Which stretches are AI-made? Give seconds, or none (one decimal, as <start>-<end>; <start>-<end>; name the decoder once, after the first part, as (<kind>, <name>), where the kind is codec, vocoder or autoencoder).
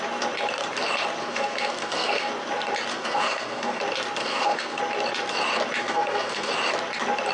1.2-2.3 (codec, SNAC); 2.9-3.8; 4.2-4.8; 5.8-6.5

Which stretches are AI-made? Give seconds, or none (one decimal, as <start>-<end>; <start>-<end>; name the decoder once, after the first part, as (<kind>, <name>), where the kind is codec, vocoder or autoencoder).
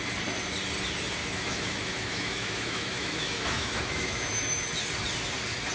1.2-4.6 (autoencoder, DAC-VAE)